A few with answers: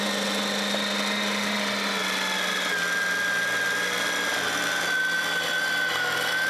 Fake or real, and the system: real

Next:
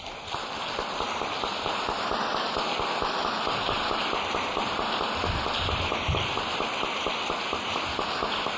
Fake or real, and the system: real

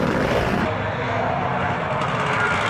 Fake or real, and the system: fake, vocoder, BigVGAN v2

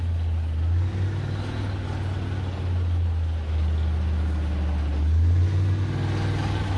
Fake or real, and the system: real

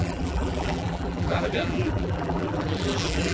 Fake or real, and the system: fake, vocoder, BigVGAN v2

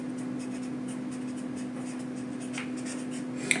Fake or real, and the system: real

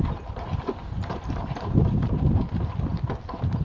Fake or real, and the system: fake, vocoder, BigVGAN v2